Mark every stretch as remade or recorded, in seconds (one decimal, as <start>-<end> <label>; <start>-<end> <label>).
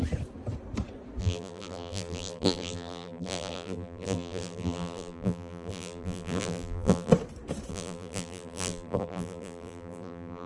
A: 0.0-1.2 recorded; 1.2-7.1 remade; 7.1-7.7 recorded; 7.7-10.5 remade